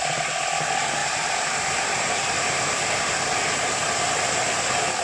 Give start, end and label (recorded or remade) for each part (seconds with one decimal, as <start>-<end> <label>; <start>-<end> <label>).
0.0-1.0 recorded; 1.0-4.0 remade; 4.0-5.0 recorded